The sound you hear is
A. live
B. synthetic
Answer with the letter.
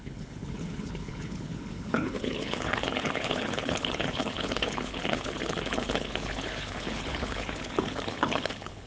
B